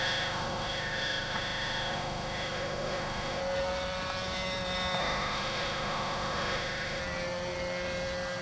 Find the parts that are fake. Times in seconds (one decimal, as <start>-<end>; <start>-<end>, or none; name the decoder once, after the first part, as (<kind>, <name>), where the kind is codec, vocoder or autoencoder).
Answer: 0.0-3.4 (autoencoder, DAC-VAE); 5.0-7.0